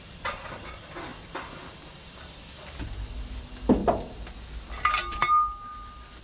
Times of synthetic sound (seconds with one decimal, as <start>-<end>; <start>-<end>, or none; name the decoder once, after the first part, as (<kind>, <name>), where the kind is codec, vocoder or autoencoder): none